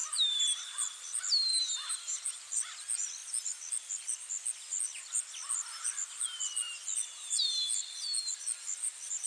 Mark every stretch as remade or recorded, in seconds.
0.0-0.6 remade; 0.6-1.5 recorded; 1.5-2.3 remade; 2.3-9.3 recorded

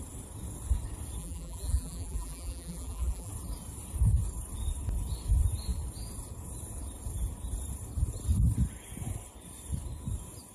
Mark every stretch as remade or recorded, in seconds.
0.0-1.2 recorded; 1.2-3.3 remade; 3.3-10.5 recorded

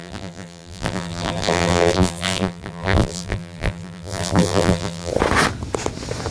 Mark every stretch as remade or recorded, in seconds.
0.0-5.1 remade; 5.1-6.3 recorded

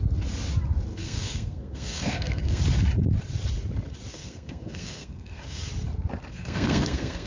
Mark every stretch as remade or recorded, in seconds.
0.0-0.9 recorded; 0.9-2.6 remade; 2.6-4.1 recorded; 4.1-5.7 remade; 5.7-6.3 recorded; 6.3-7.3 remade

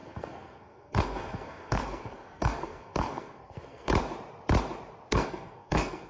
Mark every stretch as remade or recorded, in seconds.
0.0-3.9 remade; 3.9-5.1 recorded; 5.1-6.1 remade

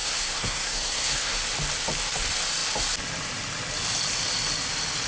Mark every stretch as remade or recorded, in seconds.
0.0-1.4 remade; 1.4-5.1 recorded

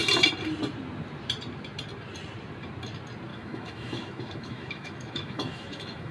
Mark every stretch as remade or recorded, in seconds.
0.0-3.3 recorded; 3.3-6.1 remade